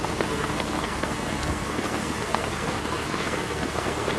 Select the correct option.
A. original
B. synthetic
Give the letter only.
B